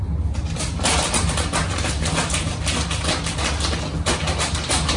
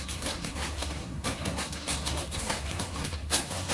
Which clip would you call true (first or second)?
first